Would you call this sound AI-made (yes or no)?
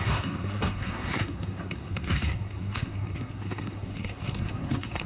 yes